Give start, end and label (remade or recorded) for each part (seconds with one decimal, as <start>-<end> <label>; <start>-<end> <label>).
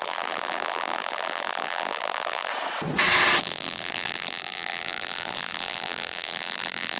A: 0.0-2.5 remade; 2.5-3.4 recorded; 3.4-7.0 remade